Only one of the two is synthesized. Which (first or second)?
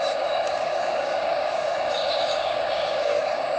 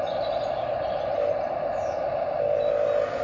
first